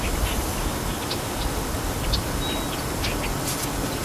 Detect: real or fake real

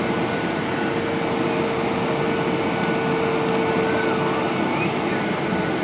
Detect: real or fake real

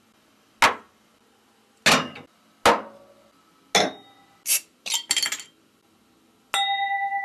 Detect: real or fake real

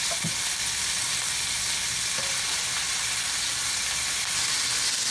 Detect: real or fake real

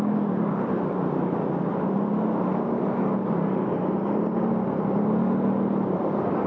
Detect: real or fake real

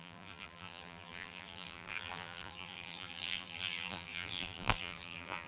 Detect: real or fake fake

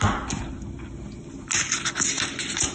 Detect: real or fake real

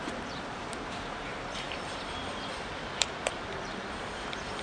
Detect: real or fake fake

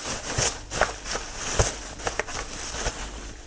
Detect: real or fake real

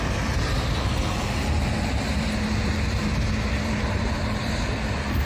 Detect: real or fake fake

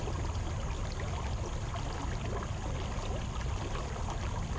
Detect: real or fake real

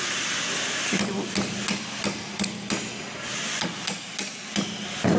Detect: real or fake real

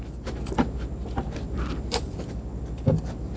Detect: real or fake fake